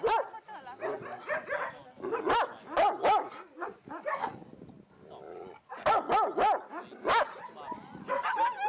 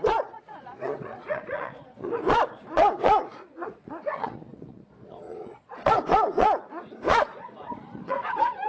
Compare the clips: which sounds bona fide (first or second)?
first